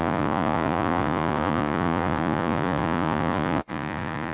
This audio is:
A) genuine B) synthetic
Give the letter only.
B